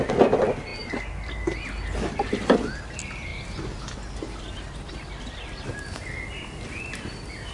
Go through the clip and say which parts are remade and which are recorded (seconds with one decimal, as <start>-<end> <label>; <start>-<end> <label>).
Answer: 0.0-7.5 recorded